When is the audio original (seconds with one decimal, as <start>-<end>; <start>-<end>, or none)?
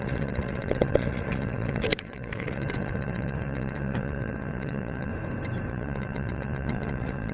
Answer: 5.1-5.7